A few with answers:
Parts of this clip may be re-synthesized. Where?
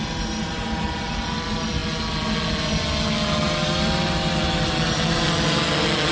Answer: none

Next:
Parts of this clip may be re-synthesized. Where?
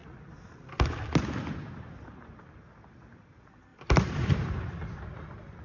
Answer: 3.7-4.7 (vocoder, BigVGAN v2)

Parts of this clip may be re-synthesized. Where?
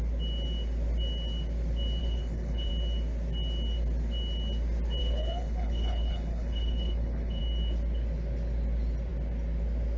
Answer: 2.0-2.7 (codec, HILCodec); 5.0-7.4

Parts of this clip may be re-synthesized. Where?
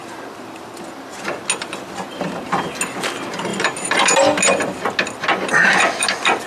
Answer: none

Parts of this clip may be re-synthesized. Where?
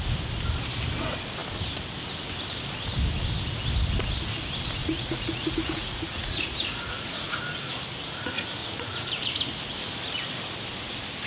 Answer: 4.8-7.4 (vocoder, Vocos); 8.6-9.3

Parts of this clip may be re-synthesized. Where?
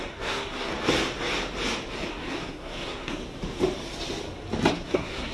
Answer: 0.0-0.7 (codec, SNAC); 2.1-3.2; 4.7-5.3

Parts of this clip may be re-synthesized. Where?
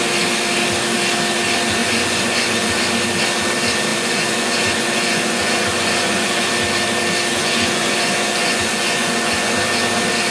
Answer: 1.8-2.8 (vocoder, Vocos); 3.9-6.5; 7.3-9.5